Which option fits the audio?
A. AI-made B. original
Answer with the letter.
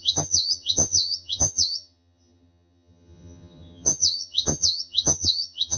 A